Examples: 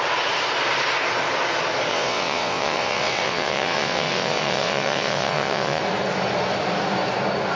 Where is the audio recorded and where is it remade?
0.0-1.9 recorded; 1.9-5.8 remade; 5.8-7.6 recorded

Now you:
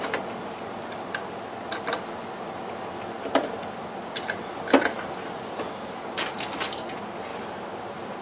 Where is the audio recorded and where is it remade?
0.0-8.2 recorded

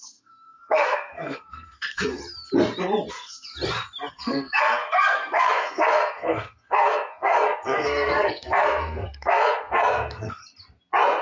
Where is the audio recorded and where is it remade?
0.0-2.2 remade; 2.2-3.1 recorded; 3.1-3.5 remade; 3.5-4.1 recorded; 4.1-10.4 remade; 10.4-11.2 recorded

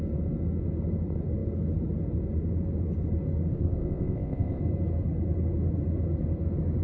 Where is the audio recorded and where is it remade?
0.0-3.5 recorded; 3.5-4.6 remade; 4.6-6.8 recorded